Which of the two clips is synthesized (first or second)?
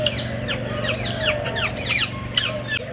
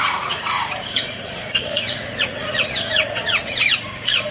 second